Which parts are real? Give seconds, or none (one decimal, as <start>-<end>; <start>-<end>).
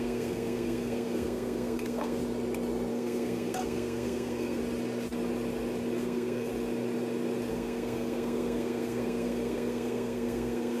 2.2-2.9; 4.6-6.0; 6.5-7.5